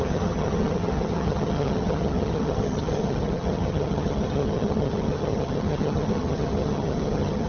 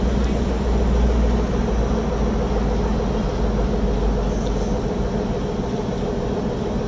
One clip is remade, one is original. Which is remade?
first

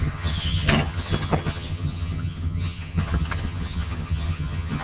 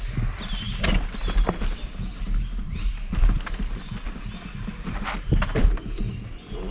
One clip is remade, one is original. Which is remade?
first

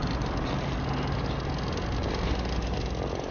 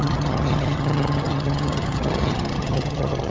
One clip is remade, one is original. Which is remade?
second